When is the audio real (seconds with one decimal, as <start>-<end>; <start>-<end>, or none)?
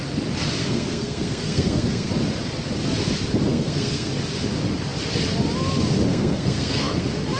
0.0-0.6; 2.1-3.5; 4.1-6.1; 7.0-7.4